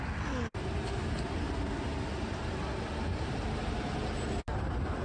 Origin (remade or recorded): recorded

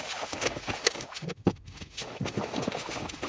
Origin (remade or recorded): remade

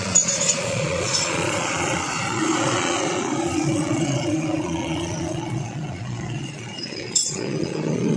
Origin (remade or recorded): remade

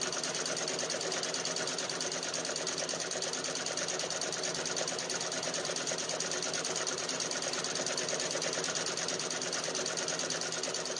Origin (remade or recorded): recorded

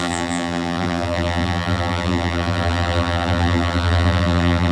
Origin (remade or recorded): remade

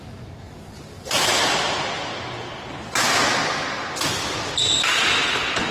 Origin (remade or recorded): recorded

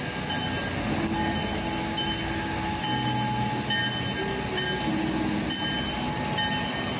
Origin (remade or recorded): recorded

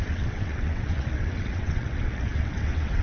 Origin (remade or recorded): remade